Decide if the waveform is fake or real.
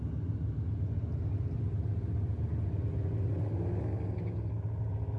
real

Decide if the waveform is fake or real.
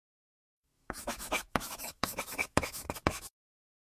fake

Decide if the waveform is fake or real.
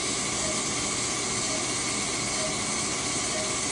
real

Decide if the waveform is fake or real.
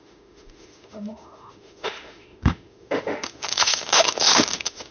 fake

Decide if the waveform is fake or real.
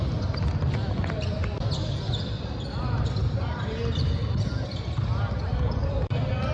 real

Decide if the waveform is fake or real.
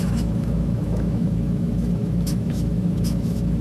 fake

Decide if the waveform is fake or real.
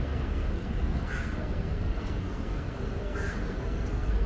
fake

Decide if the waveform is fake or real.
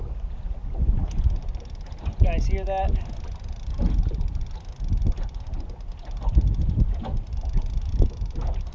real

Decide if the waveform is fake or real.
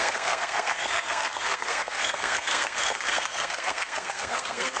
fake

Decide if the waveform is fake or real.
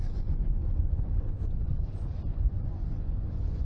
fake